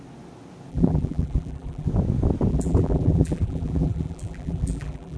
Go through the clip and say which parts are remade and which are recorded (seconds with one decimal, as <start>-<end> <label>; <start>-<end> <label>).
0.0-0.7 recorded; 0.7-1.9 remade; 1.9-2.5 recorded; 2.5-5.2 remade